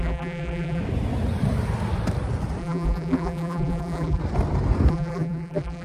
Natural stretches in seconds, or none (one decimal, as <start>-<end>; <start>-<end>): 0.8-2.6; 4.2-4.9